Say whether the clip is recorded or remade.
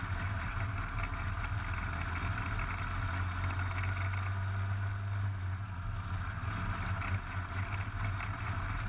recorded